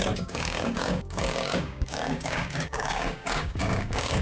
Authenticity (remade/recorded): remade